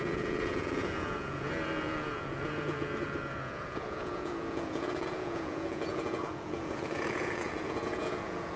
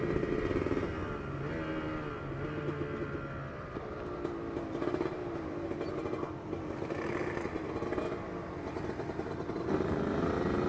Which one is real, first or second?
second